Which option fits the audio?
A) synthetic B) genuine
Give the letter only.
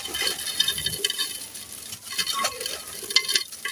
B